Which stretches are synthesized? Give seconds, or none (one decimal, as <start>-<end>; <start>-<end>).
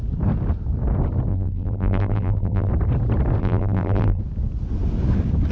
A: 1.3-2.7; 3.4-4.2